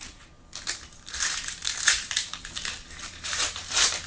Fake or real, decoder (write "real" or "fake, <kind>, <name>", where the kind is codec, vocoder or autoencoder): fake, vocoder, BigVGAN v2